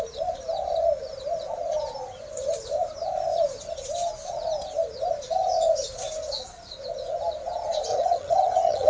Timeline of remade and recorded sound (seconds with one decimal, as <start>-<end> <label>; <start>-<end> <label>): 0.0-7.9 recorded; 7.9-8.9 remade